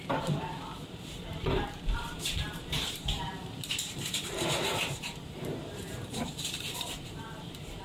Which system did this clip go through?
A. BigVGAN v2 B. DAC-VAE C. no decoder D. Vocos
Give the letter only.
A